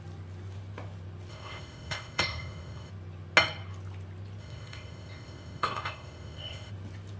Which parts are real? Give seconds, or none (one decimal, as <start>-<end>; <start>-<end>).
0.0-1.3; 2.9-4.4; 6.7-7.2